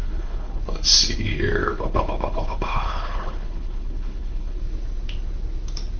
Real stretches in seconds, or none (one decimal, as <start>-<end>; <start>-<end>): 0.6-1.6; 4.6-6.0